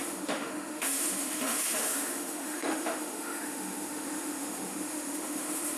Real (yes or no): no